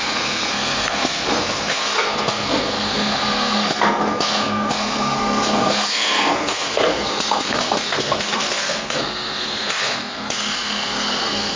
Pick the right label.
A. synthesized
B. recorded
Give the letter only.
A